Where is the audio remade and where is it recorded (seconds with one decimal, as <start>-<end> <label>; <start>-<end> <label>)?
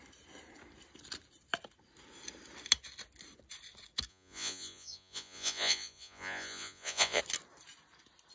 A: 0.0-4.1 recorded; 4.1-7.2 remade; 7.2-8.3 recorded